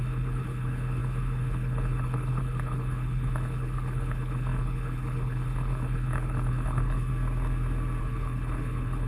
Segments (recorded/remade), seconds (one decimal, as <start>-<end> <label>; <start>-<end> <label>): 0.0-7.1 remade; 7.1-8.0 recorded; 8.0-9.1 remade